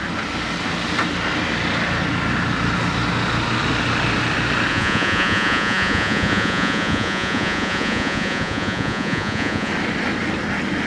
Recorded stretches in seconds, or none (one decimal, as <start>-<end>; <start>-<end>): 0.0-4.7; 9.7-10.9